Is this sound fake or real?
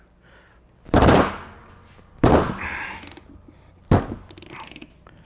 real